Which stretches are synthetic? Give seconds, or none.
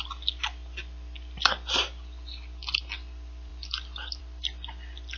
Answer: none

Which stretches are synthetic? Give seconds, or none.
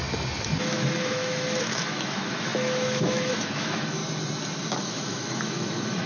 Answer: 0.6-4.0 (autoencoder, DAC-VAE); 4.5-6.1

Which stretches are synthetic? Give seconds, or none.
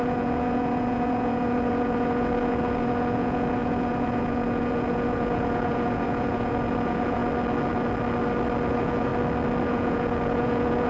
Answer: 0.0-7.2 (vocoder, Vocos); 8.7-9.1; 9.6-10.9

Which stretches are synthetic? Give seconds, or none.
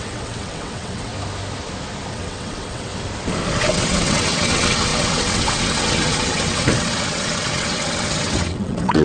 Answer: 0.0-1.1 (vocoder, WaveNeXt); 2.1-2.9; 3.6-9.0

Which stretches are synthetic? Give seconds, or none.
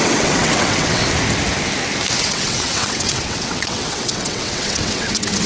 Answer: 0.0-1.0 (vocoder, WaveNeXt); 2.2-5.5